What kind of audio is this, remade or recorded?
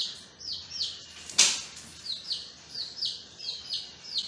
recorded